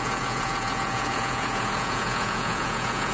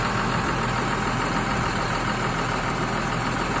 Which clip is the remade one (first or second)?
first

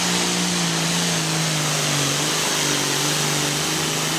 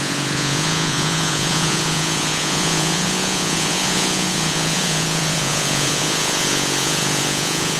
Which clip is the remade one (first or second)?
second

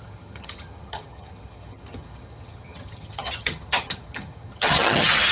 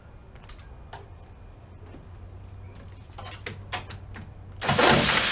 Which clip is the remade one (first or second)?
first